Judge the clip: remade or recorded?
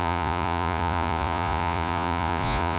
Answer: remade